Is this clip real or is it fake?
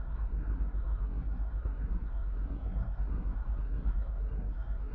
fake